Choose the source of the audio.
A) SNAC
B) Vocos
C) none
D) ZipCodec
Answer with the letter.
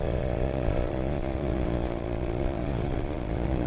B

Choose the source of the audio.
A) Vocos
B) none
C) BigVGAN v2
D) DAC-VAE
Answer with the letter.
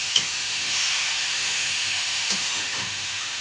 D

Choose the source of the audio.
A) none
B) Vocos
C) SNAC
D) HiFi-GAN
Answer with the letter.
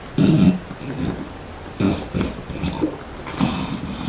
A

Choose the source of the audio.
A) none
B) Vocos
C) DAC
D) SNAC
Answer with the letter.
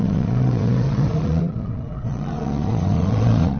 B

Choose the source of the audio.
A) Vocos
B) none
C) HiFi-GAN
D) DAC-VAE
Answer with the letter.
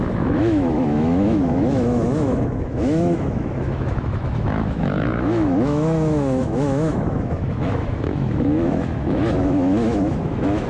D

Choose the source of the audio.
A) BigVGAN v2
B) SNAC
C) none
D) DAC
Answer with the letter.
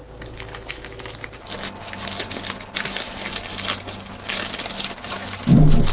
C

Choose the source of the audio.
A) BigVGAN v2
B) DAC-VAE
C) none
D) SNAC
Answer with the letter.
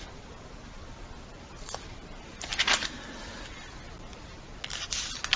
C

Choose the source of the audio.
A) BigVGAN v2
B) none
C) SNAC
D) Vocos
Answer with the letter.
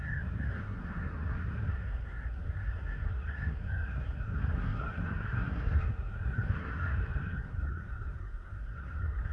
C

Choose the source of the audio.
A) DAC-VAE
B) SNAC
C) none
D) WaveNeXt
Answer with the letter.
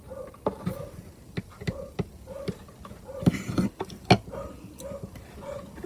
C